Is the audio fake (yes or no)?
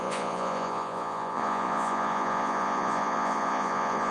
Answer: yes